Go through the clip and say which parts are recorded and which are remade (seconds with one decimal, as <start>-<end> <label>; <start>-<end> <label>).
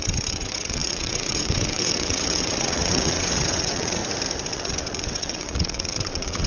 0.0-4.0 remade; 4.0-4.5 recorded; 4.5-6.5 remade